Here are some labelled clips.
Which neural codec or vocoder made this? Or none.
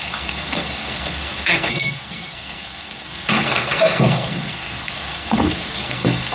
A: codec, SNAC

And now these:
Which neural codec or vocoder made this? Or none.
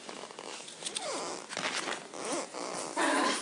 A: none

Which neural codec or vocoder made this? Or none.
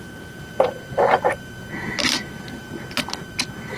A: none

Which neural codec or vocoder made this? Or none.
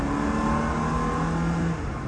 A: none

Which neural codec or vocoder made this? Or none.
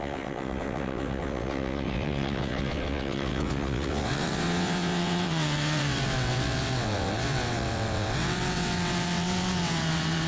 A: vocoder, WaveNeXt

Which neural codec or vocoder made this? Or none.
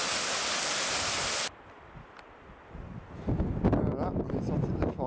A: none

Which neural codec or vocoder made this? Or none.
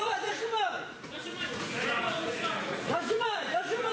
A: vocoder, Vocos